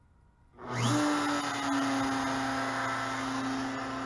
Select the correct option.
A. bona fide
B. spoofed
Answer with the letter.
A